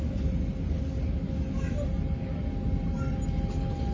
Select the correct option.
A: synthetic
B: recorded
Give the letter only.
B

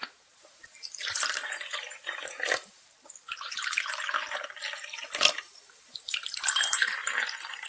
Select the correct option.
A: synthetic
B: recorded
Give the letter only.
A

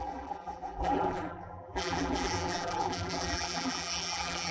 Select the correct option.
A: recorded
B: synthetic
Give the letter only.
B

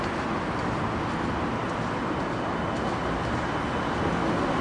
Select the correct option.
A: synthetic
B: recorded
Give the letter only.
B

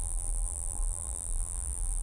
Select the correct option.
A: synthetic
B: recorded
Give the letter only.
A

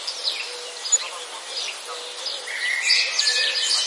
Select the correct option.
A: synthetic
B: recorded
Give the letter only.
B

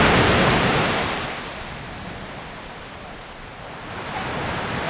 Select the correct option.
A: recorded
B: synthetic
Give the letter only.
B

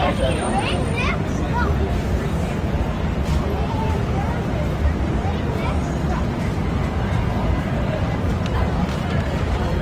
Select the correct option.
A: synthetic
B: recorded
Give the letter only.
A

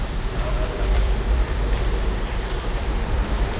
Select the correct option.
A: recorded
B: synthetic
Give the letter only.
B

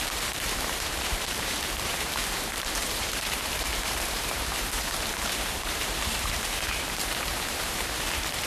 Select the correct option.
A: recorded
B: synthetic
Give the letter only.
B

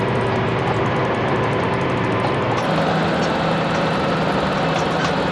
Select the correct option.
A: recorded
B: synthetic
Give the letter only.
A